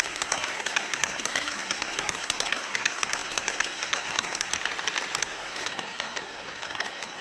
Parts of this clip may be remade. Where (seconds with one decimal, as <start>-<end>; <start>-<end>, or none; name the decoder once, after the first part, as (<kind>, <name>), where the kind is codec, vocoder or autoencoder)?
0.0-4.5 (codec, SNAC); 5.2-7.2